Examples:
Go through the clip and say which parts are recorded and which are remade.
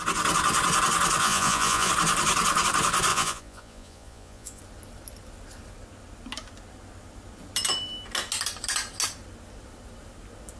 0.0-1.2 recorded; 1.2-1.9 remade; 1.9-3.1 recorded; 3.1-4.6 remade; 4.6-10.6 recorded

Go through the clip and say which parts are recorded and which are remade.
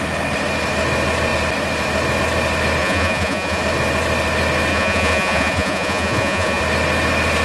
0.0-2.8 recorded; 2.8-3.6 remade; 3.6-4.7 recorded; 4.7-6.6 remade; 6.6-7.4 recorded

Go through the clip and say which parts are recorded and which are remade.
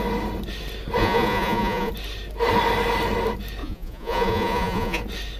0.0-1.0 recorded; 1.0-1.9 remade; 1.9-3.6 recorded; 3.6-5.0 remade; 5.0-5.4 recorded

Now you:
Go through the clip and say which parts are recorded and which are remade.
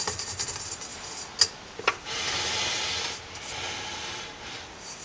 0.0-5.0 recorded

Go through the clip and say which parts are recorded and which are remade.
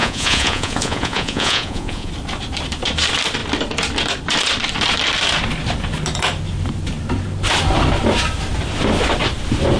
0.0-2.1 remade; 2.1-9.8 recorded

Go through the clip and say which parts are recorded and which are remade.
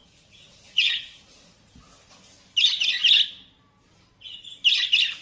0.0-1.7 remade; 1.7-5.2 recorded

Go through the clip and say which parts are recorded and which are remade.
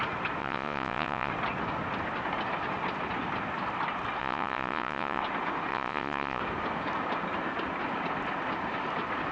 0.0-0.4 recorded; 0.4-1.3 remade; 1.3-4.2 recorded; 4.2-5.2 remade; 5.2-5.7 recorded; 5.7-6.4 remade; 6.4-9.3 recorded